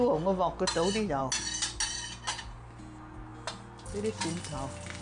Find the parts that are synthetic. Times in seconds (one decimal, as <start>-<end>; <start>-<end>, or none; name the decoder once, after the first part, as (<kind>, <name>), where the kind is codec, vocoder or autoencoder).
none